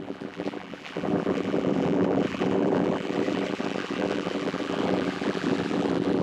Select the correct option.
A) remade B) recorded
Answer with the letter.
A